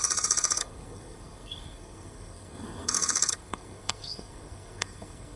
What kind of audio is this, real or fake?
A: fake